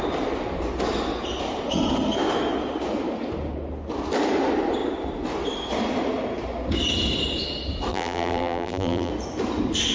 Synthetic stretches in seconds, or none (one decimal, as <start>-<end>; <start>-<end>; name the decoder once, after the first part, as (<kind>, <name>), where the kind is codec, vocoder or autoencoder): 7.9-9.1 (vocoder, BigVGAN v2)